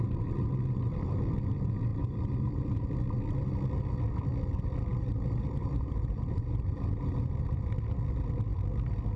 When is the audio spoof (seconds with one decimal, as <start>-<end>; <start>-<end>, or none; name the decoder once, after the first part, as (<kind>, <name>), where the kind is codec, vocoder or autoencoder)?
1.9-2.9 (vocoder, BigVGAN v2); 4.9-7.3